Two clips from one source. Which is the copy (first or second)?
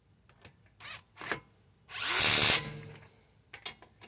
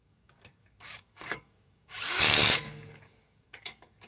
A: second